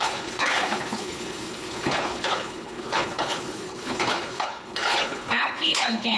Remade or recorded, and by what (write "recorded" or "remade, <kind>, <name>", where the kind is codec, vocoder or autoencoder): remade, codec, HILCodec